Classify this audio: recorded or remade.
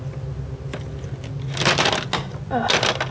recorded